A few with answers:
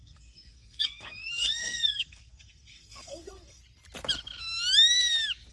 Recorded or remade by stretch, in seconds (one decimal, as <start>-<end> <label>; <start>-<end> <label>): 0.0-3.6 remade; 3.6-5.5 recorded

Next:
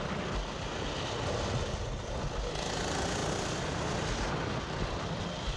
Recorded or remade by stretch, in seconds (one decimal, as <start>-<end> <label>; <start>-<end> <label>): 0.0-5.6 recorded

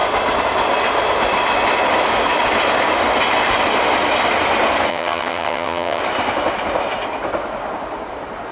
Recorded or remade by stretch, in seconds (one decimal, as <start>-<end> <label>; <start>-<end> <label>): 0.0-4.9 recorded; 4.9-6.0 remade; 6.0-8.5 recorded

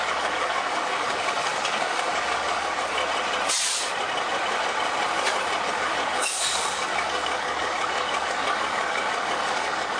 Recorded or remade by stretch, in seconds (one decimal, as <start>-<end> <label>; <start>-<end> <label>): 0.0-3.0 remade; 3.0-5.7 recorded; 5.7-10.0 remade

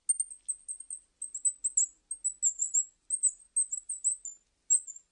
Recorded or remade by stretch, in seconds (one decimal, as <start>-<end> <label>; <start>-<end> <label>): 0.0-5.1 recorded

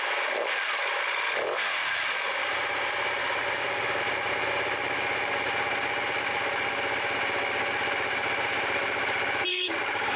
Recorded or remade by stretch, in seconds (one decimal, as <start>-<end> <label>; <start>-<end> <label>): 0.0-3.2 recorded; 3.2-4.0 remade; 4.0-9.5 recorded; 9.5-10.2 remade

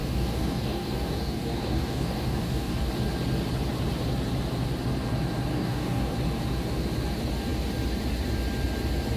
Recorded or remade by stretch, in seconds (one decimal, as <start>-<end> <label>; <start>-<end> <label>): 0.0-2.9 remade; 2.9-5.5 recorded; 5.5-6.1 remade; 6.1-9.2 recorded